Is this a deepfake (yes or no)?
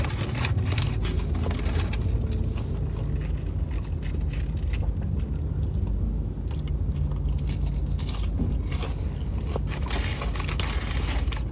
no